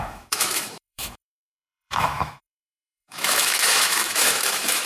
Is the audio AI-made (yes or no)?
yes